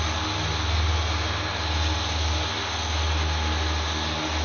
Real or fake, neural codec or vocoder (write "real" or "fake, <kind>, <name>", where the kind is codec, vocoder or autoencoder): real